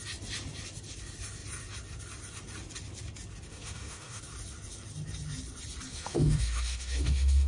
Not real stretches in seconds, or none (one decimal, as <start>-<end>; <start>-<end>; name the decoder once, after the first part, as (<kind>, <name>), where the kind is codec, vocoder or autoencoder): 3.5-4.2 (autoencoder, DAC-VAE); 5.9-7.5